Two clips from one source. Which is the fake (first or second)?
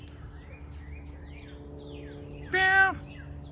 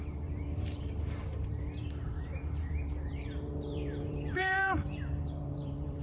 second